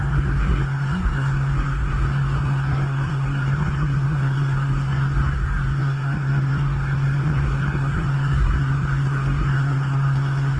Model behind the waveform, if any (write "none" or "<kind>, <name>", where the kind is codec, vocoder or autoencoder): codec, SNAC